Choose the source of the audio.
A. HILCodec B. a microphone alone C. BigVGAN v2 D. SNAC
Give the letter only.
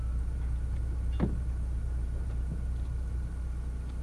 B